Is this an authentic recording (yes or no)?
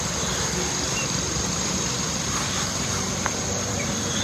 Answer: no